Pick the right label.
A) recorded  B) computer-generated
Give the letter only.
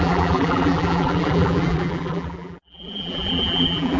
B